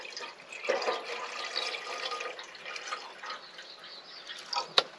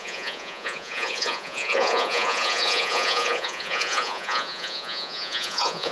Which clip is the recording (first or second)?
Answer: first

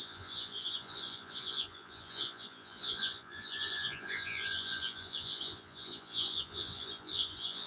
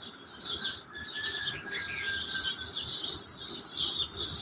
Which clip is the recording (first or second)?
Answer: second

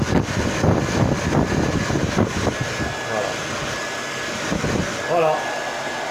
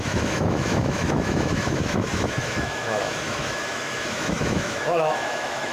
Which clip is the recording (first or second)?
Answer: first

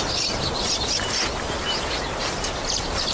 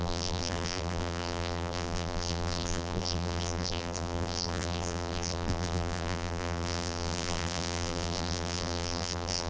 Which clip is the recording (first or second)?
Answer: first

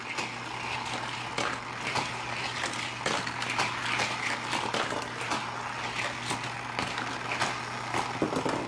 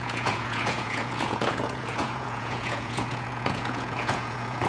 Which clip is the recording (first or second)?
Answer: first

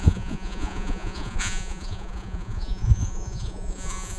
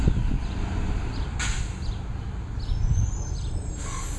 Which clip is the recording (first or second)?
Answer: second